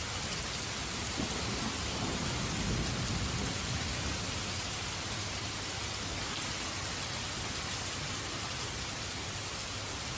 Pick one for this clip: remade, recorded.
recorded